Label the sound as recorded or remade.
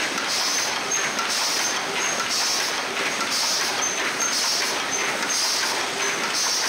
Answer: recorded